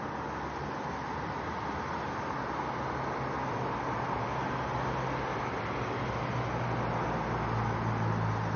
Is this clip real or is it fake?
real